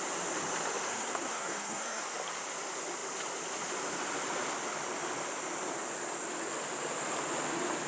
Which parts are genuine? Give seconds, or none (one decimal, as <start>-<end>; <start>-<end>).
0.0-0.9; 2.0-7.9